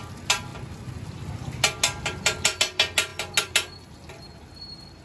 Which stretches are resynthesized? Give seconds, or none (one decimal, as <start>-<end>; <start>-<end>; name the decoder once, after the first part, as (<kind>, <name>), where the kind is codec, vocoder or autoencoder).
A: none